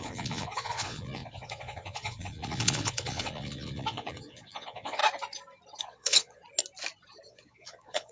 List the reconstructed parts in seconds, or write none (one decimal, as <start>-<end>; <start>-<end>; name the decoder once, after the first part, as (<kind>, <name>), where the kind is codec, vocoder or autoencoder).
0.0-5.0 (vocoder, Vocos); 5.8-6.4; 7.3-8.1